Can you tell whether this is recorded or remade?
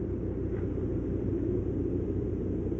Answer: recorded